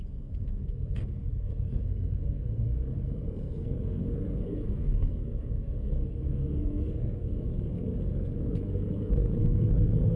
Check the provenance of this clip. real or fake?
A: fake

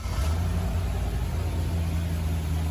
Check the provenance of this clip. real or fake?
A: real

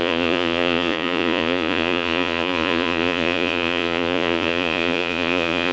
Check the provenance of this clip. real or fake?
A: fake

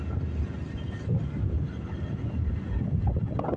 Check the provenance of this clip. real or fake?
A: real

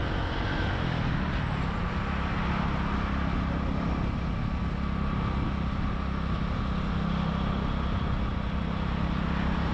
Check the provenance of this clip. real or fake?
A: real